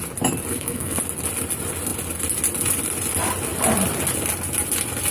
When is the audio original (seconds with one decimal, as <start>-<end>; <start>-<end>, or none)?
0.0-0.5; 1.0-5.1

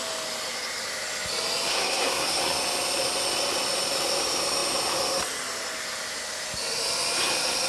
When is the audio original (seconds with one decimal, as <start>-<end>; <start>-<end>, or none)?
0.0-1.7; 2.4-7.7